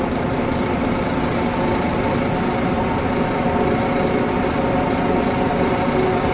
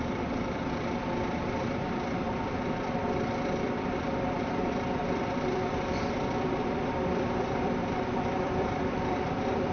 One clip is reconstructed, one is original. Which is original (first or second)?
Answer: first